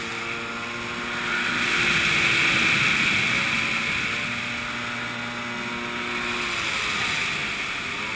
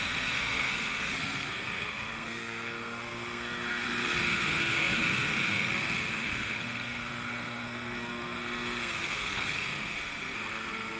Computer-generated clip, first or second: second